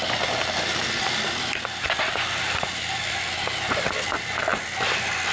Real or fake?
real